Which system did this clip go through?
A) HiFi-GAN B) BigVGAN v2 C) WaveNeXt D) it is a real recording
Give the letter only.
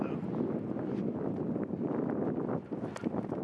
D